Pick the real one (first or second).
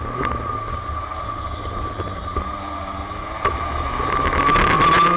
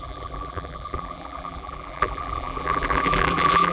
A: first